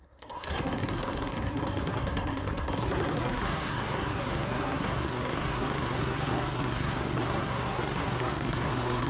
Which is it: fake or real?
fake